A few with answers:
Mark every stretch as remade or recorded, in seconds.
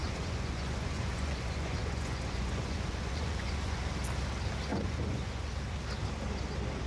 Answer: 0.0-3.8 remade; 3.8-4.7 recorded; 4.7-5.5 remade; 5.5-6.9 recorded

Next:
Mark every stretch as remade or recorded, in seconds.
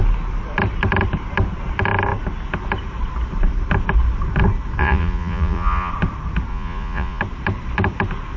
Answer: 0.0-4.8 recorded; 4.8-5.9 remade; 5.9-6.5 recorded; 6.5-7.2 remade; 7.2-8.4 recorded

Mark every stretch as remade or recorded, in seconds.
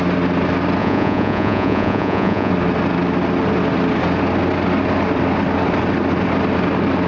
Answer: 0.0-0.8 recorded; 0.8-2.5 remade; 2.5-7.1 recorded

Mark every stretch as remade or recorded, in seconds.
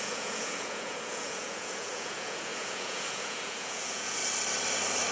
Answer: 0.0-4.2 remade; 4.2-5.1 recorded